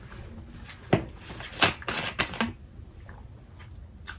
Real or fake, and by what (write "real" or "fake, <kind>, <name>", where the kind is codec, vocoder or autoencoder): real